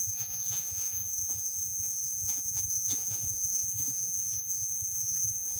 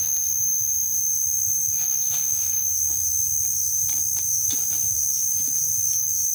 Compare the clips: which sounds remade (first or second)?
first